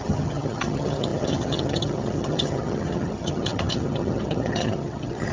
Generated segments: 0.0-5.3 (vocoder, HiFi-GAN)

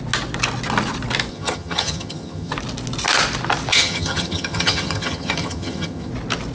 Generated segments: 1.3-2.5 (vocoder, HiFi-GAN); 3.7-6.1

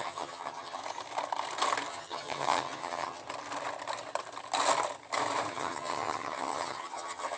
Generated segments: 0.0-0.8 (vocoder, HiFi-GAN); 1.9-3.2; 5.5-7.4